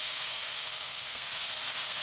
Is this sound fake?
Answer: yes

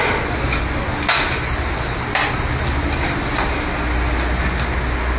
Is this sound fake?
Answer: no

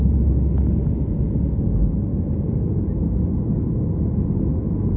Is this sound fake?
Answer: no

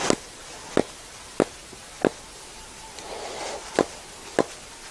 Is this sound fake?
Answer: no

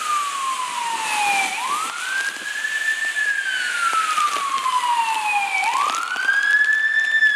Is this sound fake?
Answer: no